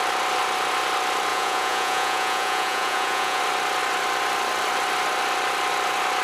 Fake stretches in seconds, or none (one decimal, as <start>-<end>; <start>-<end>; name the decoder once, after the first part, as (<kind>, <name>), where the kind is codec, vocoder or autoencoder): 1.3-3.4 (vocoder, Vocos)